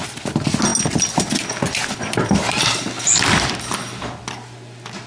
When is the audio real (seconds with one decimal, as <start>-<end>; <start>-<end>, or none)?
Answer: 0.0-5.1